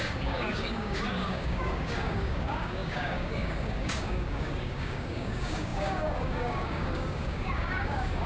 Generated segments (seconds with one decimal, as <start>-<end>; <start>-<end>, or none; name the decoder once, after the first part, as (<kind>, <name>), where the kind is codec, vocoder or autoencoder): 0.0-8.3 (codec, DAC)